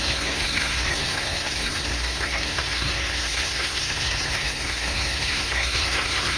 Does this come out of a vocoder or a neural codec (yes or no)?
yes